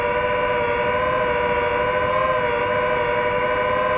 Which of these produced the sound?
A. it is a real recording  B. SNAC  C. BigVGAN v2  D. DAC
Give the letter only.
A